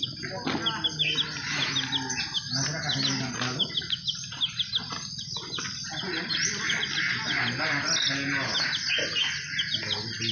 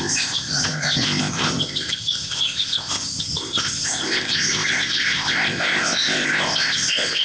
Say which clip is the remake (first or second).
second